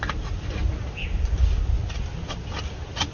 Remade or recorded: recorded